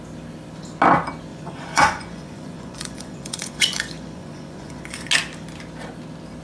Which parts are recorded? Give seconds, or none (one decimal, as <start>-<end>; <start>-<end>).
0.0-1.3; 5.1-6.4